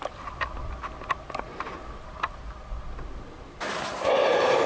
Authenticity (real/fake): real